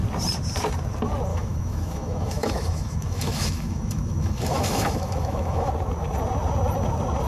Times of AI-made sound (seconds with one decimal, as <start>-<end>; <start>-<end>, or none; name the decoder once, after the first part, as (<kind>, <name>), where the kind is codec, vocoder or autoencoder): 1.3-5.7 (autoencoder, DAC-VAE)